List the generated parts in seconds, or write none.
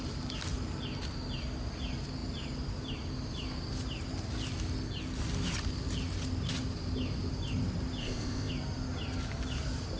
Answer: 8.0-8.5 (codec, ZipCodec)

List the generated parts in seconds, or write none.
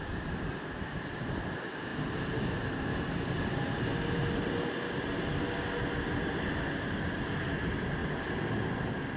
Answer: none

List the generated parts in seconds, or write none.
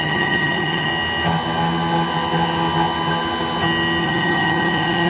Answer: 0.0-0.9 (vocoder, HiFi-GAN); 4.0-5.1